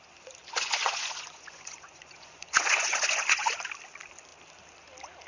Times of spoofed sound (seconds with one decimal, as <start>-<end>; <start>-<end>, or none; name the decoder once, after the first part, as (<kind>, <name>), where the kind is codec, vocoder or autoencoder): 0.4-3.6 (vocoder, Vocos)